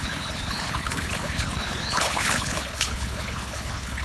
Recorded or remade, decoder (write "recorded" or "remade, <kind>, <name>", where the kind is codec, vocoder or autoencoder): remade, codec, HILCodec